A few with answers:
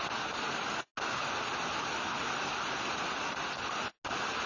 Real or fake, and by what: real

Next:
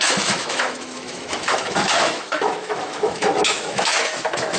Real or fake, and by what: fake, autoencoder, DAC-VAE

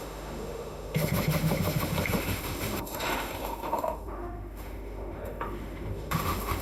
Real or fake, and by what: fake, autoencoder, DAC-VAE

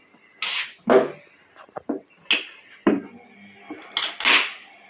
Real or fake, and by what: real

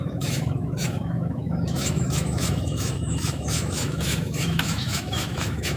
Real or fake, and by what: fake, autoencoder, DAC-VAE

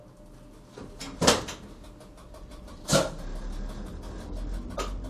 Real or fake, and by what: real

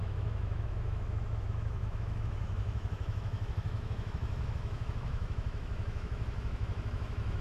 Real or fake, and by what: fake, autoencoder, DAC-VAE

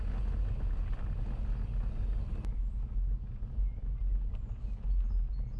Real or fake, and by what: real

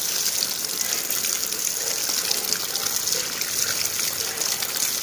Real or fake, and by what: real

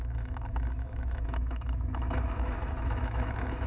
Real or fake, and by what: fake, autoencoder, DAC-VAE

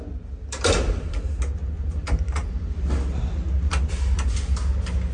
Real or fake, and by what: real